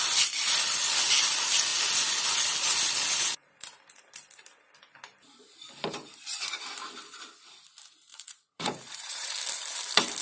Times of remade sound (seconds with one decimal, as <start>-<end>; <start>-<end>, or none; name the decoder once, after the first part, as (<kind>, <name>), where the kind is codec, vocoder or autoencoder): 8.1-9.3 (vocoder, Vocos)